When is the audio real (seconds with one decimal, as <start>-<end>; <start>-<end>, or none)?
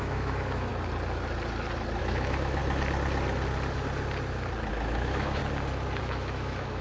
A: 0.7-2.0; 2.6-4.7; 5.4-6.0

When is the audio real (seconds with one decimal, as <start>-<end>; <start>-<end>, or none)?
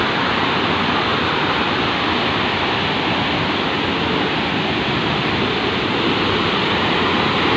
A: 0.0-7.6